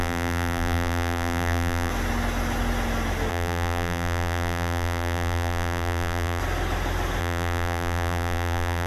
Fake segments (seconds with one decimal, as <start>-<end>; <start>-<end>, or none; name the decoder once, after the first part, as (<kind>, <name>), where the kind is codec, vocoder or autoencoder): 0.0-1.9 (vocoder, BigVGAN v2); 3.3-6.4; 7.2-8.9